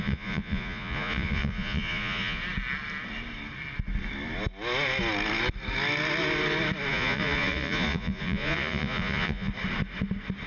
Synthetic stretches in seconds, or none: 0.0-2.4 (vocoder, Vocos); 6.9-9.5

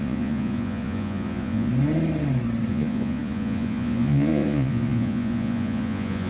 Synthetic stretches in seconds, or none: 0.0-1.7 (vocoder, Vocos); 2.7-6.3

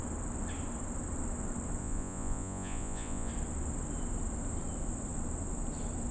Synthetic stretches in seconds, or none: 1.8-3.3 (vocoder, Vocos)

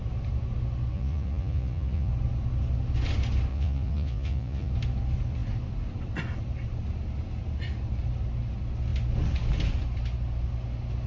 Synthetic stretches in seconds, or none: 0.9-2.1 (vocoder, Vocos); 3.5-4.7

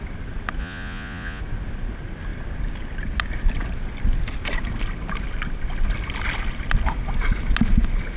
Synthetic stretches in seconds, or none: 0.6-1.4 (vocoder, Vocos)

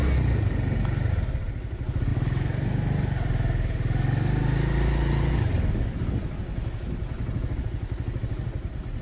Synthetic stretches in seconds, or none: none

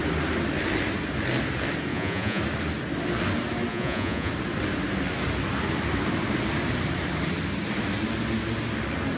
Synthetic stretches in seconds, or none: 1.9-2.4 (vocoder, Vocos); 3.7-4.3